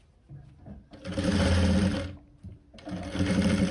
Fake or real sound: real